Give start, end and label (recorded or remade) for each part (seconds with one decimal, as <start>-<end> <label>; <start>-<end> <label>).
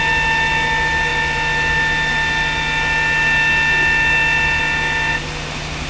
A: 0.0-5.9 recorded